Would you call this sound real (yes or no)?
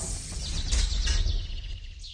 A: yes